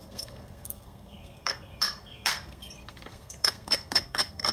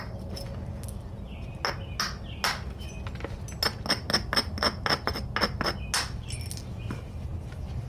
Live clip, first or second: second